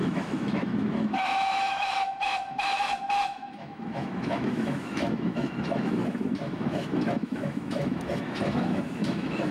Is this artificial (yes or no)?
yes